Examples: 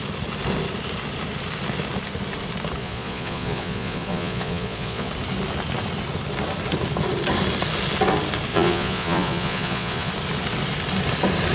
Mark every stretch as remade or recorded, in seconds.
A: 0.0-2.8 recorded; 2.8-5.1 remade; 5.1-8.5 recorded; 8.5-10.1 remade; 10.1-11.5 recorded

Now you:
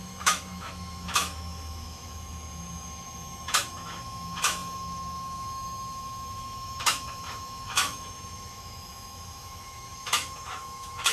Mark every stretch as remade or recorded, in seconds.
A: 0.0-11.1 remade

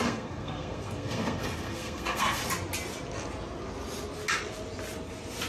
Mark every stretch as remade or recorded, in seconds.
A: 0.0-2.4 remade; 2.4-5.5 recorded